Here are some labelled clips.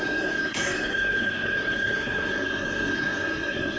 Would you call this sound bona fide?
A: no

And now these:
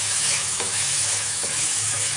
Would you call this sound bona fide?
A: no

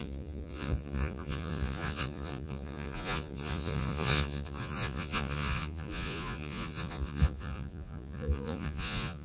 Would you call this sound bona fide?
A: no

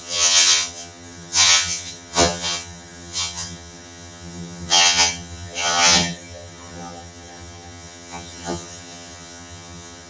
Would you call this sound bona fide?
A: no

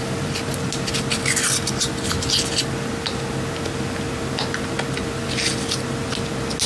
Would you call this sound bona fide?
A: yes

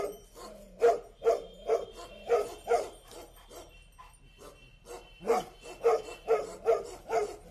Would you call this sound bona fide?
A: yes